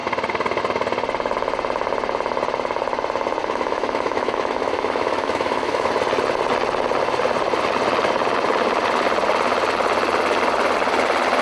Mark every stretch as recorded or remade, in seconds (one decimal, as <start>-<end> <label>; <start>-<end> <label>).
0.0-3.4 recorded; 3.4-5.9 remade; 5.9-11.4 recorded